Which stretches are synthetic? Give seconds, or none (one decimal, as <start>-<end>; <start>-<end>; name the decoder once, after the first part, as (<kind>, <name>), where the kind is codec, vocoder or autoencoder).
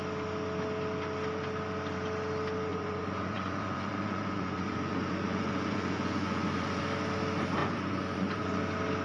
2.7-6.8 (vocoder, Vocos); 7.6-8.6